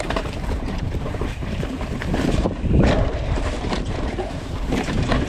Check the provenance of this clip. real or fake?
fake